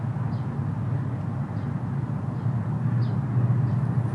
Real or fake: real